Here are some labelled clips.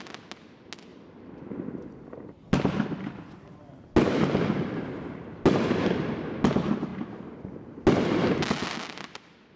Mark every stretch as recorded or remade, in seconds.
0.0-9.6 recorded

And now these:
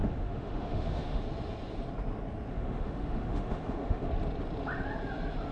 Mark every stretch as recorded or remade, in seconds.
0.0-1.2 remade; 1.2-2.5 recorded; 2.5-4.1 remade; 4.1-5.5 recorded

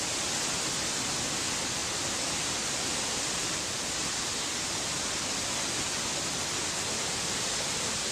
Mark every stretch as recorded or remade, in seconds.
0.0-8.1 recorded

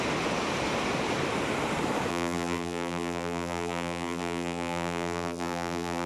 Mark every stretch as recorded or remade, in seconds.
0.0-2.1 recorded; 2.1-6.1 remade

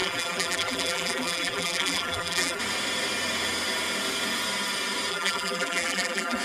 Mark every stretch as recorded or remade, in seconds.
0.0-2.6 remade; 2.6-5.1 recorded; 5.1-6.4 remade

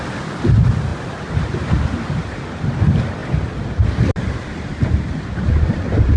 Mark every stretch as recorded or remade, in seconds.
0.0-6.2 remade

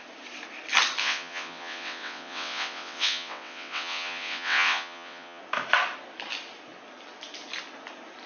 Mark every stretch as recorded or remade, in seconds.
0.0-1.0 recorded; 1.0-5.4 remade; 5.4-8.3 recorded

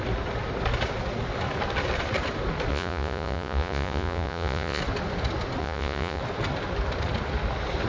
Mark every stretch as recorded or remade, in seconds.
0.0-2.7 recorded; 2.7-4.8 remade; 4.8-5.6 recorded; 5.6-6.2 remade; 6.2-7.9 recorded